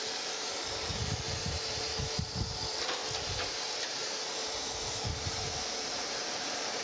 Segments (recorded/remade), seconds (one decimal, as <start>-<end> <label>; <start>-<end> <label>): 0.0-3.0 remade; 3.0-3.9 recorded; 3.9-6.8 remade